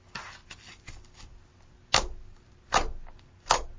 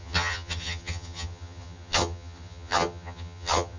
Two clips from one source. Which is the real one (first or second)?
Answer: first